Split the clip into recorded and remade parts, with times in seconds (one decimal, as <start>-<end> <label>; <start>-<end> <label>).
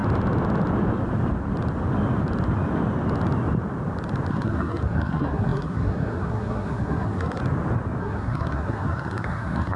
0.0-4.3 recorded; 4.3-7.4 remade; 7.4-8.0 recorded; 8.0-9.8 remade